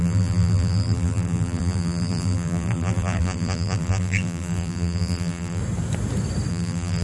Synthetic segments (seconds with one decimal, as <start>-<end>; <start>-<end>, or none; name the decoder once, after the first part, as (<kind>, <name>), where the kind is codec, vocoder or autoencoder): 0.0-5.6 (vocoder, BigVGAN v2); 6.5-7.0